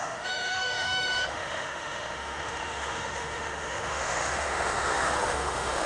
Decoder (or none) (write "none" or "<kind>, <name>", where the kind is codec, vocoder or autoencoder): autoencoder, DAC-VAE